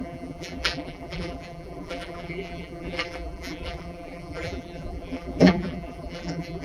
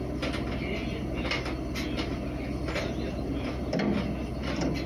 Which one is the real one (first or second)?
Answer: second